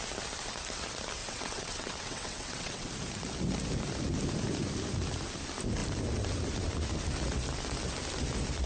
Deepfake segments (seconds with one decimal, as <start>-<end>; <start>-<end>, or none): 1.2-2.9

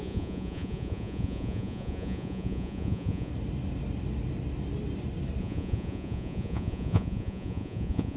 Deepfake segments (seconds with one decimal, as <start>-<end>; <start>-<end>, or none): 0.0-3.3; 5.4-8.2

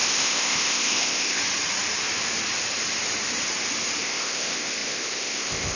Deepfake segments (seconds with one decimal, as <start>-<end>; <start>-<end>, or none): 0.0-1.4; 4.0-5.8

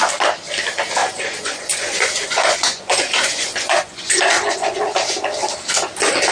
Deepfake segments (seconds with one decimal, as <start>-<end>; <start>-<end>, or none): 1.0-4.8

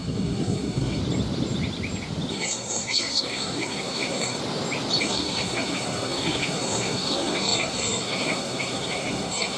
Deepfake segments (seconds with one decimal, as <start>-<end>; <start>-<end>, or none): 0.0-1.0; 2.3-4.4; 5.0-9.6

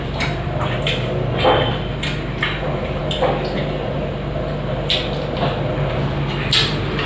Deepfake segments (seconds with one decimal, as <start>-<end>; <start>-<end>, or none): none

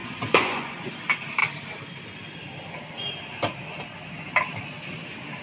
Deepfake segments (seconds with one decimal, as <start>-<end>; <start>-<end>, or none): 0.0-0.9

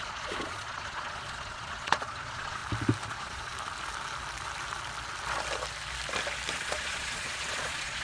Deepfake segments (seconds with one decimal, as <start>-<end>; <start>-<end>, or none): 0.0-2.6; 3.1-3.5; 6.5-8.0